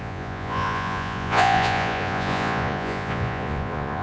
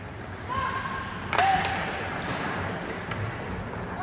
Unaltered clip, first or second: second